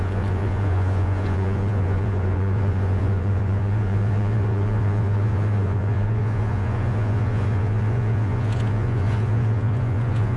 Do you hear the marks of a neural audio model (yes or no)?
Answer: yes